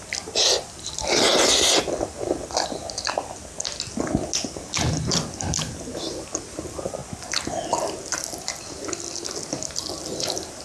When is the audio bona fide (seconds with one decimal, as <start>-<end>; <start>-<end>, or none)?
0.0-10.6